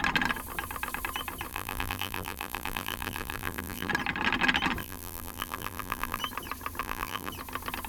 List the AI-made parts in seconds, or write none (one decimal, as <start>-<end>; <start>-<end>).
1.5-3.9; 4.8-6.2; 6.8-7.3

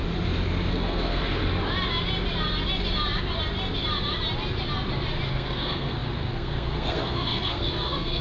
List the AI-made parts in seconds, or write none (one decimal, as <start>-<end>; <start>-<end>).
0.7-1.4; 5.3-8.2

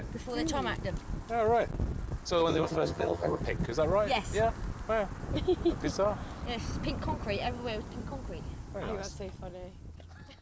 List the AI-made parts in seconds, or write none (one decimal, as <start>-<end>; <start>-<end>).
2.5-3.4

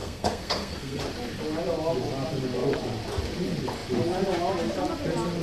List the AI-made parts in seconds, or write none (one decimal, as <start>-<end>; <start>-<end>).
0.0-1.0

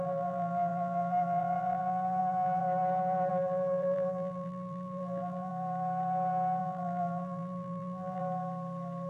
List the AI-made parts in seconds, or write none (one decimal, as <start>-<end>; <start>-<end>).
0.0-2.6; 3.3-5.5; 6.6-8.2

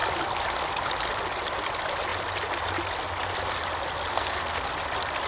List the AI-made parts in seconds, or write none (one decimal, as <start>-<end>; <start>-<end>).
4.1-4.7

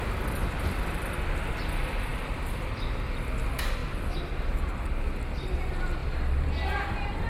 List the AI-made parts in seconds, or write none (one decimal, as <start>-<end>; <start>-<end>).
0.4-1.5; 3.8-4.3; 6.0-6.5